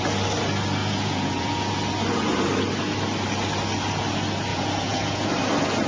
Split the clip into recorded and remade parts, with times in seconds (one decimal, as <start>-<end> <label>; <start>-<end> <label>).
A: 0.0-0.8 recorded; 0.8-1.8 remade; 1.8-4.5 recorded; 4.5-5.3 remade; 5.3-5.9 recorded